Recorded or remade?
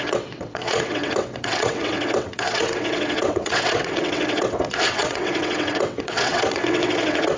remade